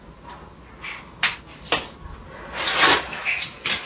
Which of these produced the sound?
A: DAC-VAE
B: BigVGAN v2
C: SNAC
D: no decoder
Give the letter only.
D